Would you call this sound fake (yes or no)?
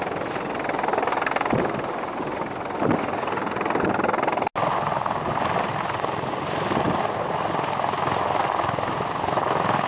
no